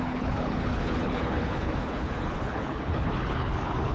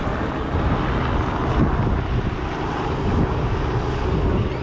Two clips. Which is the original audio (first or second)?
second